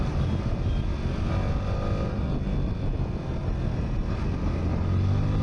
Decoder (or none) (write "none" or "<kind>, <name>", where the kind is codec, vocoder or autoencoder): none